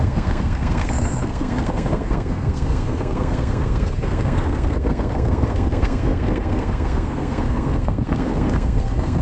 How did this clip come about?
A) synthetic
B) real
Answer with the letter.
A